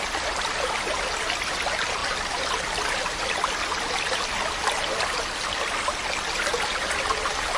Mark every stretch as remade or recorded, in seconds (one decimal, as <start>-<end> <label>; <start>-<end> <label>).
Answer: 0.0-7.6 recorded

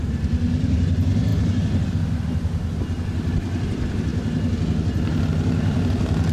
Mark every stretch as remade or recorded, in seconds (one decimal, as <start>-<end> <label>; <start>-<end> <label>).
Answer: 0.0-4.1 remade; 4.1-5.3 recorded; 5.3-6.3 remade

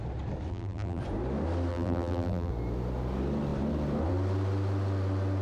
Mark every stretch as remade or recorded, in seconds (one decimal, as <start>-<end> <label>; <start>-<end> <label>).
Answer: 0.0-0.5 recorded; 0.5-1.0 remade; 1.0-1.7 recorded; 1.7-2.5 remade; 2.5-5.4 recorded

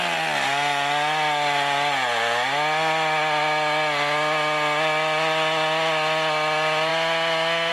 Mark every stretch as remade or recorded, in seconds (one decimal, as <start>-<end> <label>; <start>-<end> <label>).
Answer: 0.0-7.7 recorded

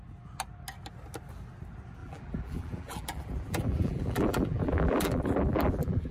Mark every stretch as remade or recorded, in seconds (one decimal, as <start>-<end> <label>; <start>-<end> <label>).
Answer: 0.0-2.0 recorded; 2.0-6.1 remade

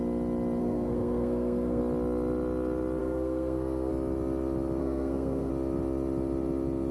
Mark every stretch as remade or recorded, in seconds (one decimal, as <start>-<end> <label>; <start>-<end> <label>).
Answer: 0.0-0.6 recorded; 0.6-1.8 remade; 1.8-3.0 recorded; 3.0-3.9 remade; 3.9-4.8 recorded; 4.8-5.5 remade; 5.5-6.9 recorded

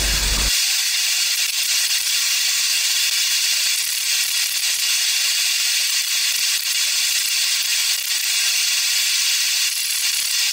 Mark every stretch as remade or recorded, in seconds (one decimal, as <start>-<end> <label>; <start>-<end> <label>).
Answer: 0.0-1.5 recorded; 1.5-2.2 remade; 2.2-2.7 recorded; 2.7-6.2 remade; 6.2-10.5 recorded